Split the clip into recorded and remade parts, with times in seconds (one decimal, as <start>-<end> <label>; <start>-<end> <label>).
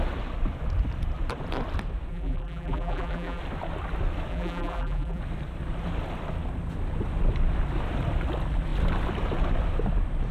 0.0-2.1 recorded; 2.1-3.4 remade; 3.4-4.3 recorded; 4.3-5.2 remade; 5.2-10.3 recorded